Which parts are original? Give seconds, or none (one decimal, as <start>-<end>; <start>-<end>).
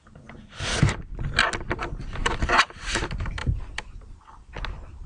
0.0-2.2; 3.0-3.4; 4.4-5.1